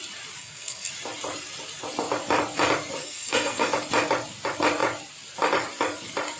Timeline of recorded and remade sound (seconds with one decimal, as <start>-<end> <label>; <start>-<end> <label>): 0.0-0.4 recorded; 0.4-0.9 remade; 0.9-3.0 recorded; 3.0-3.7 remade; 3.7-6.4 recorded